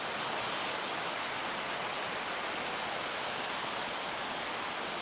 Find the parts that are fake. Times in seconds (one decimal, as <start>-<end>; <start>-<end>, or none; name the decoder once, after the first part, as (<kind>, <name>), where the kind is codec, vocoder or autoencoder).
0.0-1.4 (vocoder, BigVGAN v2); 4.4-5.0